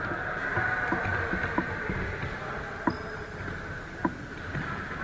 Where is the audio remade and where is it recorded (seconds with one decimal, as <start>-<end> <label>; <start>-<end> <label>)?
0.0-5.0 recorded